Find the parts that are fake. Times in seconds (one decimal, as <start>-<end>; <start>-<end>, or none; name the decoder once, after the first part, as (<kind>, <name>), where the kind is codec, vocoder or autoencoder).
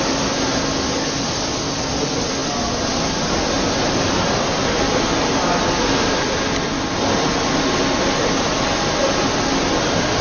none